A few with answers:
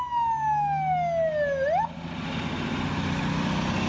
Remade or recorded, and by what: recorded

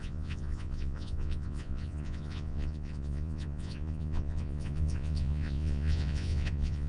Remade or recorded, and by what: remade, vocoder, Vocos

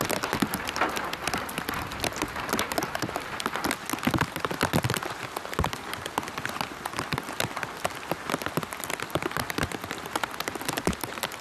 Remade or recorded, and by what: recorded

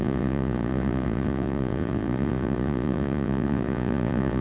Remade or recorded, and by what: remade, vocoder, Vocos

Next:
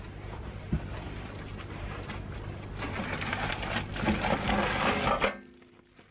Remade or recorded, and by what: recorded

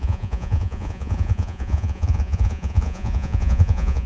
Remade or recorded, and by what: remade, vocoder, Vocos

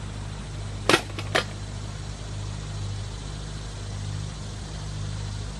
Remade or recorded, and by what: recorded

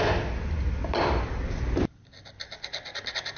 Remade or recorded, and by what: recorded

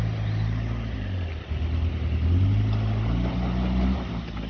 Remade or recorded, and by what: recorded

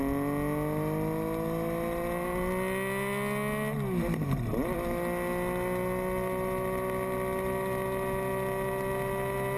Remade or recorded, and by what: recorded